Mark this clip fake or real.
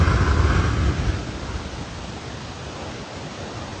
real